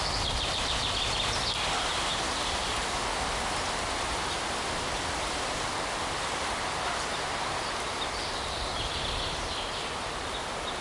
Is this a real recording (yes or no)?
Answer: yes